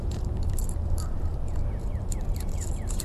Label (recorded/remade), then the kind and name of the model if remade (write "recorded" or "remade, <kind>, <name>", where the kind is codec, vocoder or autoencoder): remade, vocoder, BigVGAN v2